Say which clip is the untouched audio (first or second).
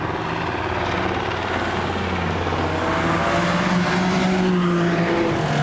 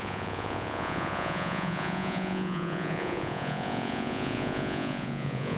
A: first